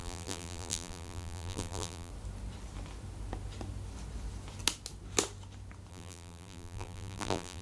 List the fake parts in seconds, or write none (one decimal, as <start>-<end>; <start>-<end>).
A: 0.0-2.1; 5.9-7.6